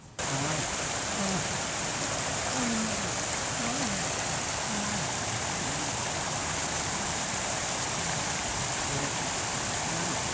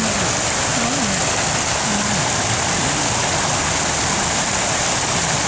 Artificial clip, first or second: first